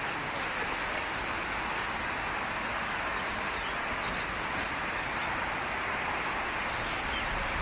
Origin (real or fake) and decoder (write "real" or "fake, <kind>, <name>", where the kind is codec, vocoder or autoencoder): real